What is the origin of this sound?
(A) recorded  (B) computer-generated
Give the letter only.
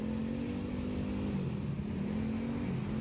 A